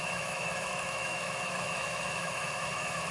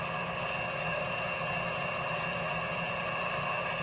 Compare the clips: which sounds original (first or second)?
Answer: second